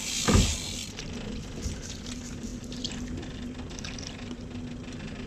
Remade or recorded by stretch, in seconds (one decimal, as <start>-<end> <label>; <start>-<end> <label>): 0.0-5.3 recorded